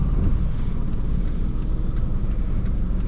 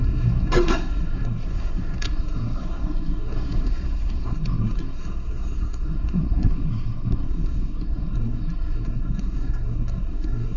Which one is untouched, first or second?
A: first